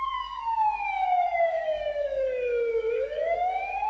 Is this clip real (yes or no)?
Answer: no